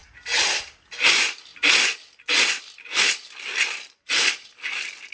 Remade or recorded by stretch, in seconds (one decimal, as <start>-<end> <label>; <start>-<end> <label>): 0.0-5.1 recorded